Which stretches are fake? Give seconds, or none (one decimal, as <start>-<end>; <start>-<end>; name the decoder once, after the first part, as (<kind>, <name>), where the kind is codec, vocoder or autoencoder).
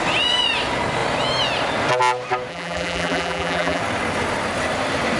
2.5-3.8 (vocoder, BigVGAN v2)